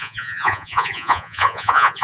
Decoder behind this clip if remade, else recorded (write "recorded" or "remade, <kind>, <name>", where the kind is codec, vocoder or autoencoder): remade, vocoder, Vocos